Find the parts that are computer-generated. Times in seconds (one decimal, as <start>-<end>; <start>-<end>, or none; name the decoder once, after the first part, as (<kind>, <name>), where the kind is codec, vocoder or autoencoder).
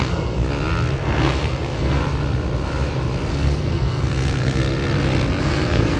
0.0-0.4 (codec, SNAC); 1.0-2.0; 3.3-4.6; 5.4-6.0